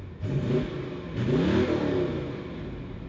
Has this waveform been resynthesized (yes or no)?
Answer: no